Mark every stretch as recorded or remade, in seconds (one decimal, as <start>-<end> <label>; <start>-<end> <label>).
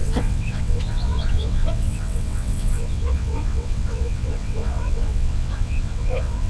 0.0-6.5 remade